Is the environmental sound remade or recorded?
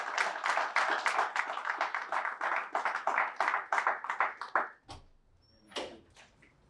recorded